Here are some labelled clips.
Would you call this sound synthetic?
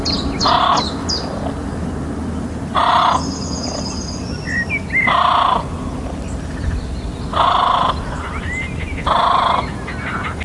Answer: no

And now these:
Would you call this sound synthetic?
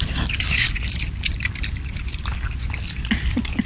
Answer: no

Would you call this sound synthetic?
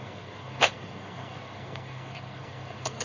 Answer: yes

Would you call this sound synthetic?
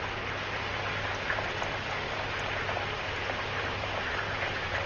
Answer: no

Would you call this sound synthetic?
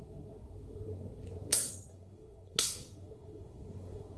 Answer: yes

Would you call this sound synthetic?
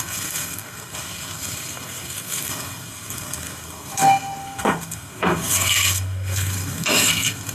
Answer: yes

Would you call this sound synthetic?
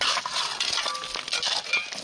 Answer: no